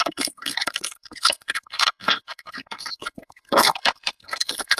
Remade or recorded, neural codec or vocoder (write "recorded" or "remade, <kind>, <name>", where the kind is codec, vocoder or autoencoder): remade, codec, SNAC